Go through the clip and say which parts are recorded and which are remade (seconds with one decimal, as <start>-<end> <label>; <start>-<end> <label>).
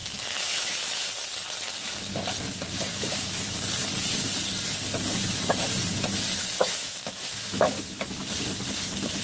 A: 0.0-1.1 remade; 1.1-2.9 recorded; 2.9-3.6 remade; 3.6-6.6 recorded; 6.6-8.0 remade; 8.0-9.2 recorded